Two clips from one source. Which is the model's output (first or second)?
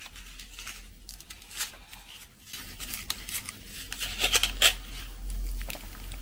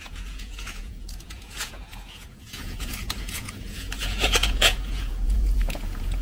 second